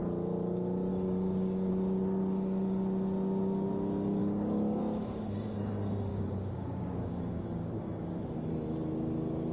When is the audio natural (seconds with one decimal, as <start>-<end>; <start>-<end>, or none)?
0.0-0.9; 1.7-4.2; 4.8-6.1; 7.8-9.5